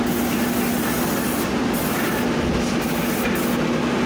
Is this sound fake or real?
real